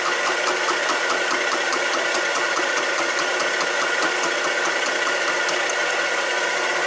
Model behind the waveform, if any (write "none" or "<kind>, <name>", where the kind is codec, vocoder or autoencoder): none